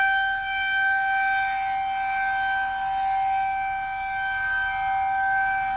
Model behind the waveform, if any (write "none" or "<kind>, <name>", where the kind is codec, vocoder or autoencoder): none